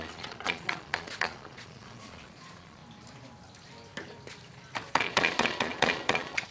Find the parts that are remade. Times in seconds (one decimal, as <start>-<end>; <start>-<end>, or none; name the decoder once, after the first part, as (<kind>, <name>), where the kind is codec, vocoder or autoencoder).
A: 0.0-2.8 (vocoder, Vocos); 4.9-6.5